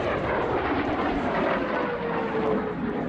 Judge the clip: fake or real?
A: real